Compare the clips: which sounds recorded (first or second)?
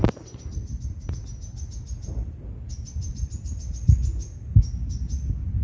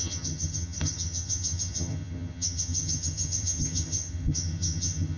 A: first